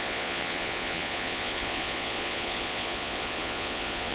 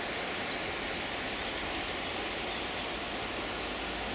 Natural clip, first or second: second